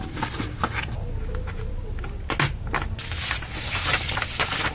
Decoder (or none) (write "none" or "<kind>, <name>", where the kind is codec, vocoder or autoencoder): none